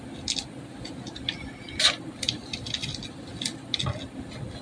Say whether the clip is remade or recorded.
recorded